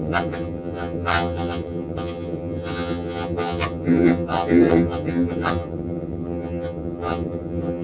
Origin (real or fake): fake